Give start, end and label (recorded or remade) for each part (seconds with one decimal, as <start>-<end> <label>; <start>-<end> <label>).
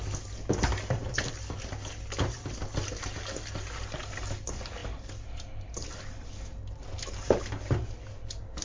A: 0.0-8.6 recorded